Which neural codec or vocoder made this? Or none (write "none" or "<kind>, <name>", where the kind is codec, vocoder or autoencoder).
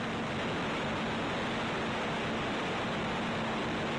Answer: none